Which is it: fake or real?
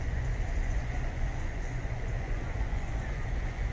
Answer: fake